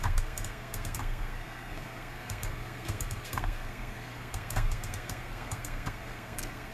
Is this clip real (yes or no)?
no